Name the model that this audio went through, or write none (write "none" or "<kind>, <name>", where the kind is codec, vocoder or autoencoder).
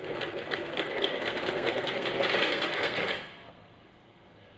codec, SNAC